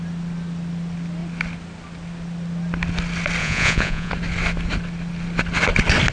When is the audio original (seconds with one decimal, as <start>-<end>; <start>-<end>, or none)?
0.0-3.4; 4.1-6.1

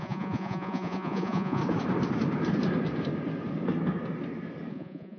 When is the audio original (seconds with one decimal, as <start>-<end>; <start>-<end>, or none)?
1.6-4.7

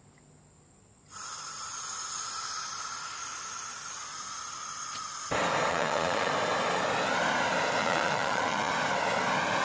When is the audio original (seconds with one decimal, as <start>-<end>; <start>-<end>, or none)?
0.0-5.7; 6.3-7.8; 8.7-9.6

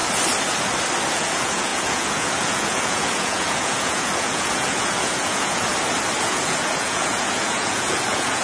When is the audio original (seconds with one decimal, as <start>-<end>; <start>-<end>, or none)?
0.0-1.1; 5.7-6.2

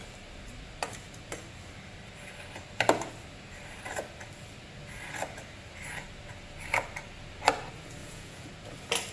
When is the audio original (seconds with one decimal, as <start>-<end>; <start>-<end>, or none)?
0.0-8.0; 8.5-9.1